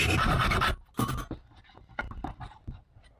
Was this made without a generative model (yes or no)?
yes